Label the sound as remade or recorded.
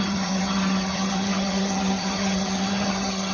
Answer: remade